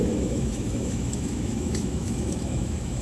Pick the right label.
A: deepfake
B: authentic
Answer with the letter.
A